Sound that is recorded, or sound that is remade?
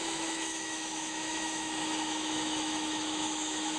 remade